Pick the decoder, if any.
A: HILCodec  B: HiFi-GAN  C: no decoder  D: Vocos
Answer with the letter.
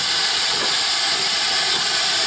C